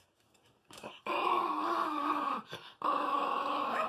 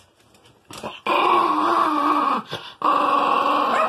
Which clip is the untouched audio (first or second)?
second